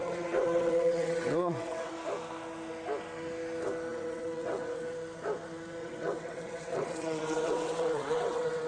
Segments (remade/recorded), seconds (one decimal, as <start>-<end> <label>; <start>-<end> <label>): 0.0-1.9 remade; 1.9-3.9 recorded; 3.9-4.9 remade; 4.9-5.8 recorded; 5.8-8.7 remade

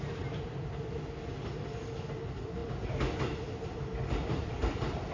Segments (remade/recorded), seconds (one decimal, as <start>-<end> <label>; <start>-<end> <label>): 0.0-5.1 recorded